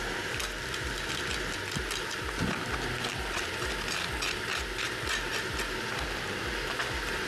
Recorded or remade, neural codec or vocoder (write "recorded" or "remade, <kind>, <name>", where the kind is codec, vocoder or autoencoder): recorded